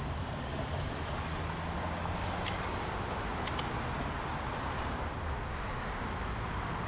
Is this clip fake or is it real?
real